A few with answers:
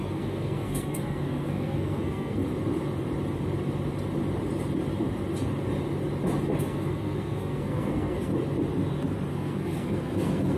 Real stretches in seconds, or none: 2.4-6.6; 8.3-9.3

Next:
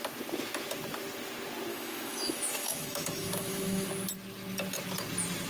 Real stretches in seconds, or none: 0.0-1.7; 3.9-5.5

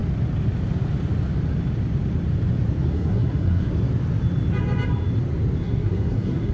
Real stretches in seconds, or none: 0.0-2.9; 3.7-5.6

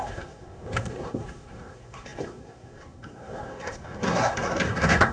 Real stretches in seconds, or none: none

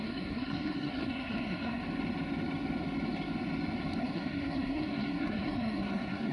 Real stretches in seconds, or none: 1.8-4.0

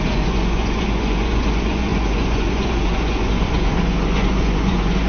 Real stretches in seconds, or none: none

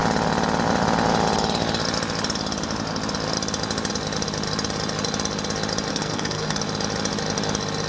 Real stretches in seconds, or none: 0.0-5.9; 6.6-7.9

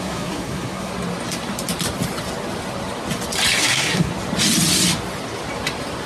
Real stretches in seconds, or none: 0.9-3.6; 4.1-6.1